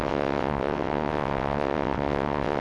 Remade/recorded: remade